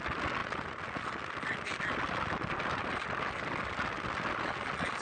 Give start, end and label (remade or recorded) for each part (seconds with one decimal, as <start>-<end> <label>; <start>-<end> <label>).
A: 0.0-5.0 recorded